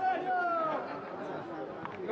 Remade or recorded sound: recorded